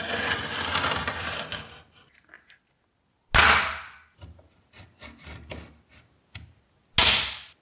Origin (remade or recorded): recorded